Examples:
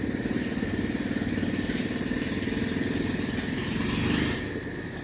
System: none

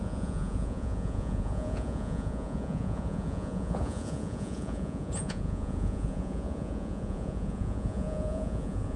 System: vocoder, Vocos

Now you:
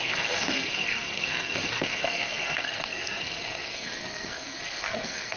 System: codec, SNAC